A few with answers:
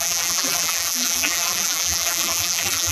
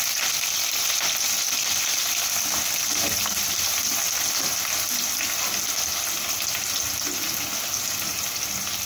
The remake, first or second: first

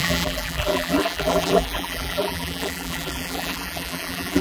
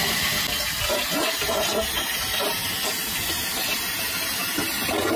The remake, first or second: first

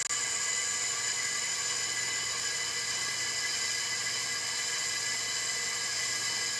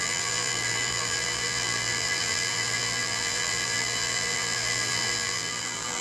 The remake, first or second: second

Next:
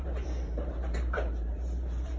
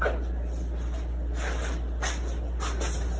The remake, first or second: first